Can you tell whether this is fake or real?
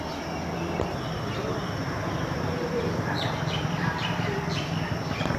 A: real